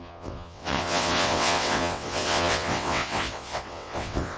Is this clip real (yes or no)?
no